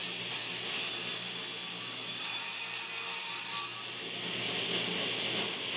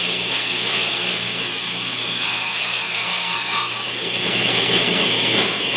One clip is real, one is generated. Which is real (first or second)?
first